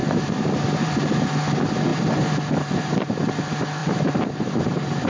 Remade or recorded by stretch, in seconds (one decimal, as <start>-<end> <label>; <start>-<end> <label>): 0.0-1.1 remade; 1.1-1.9 recorded; 1.9-3.2 remade; 3.2-3.8 recorded; 3.8-5.1 remade